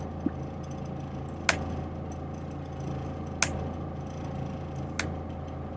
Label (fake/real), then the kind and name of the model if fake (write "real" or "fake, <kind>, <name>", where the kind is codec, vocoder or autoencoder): real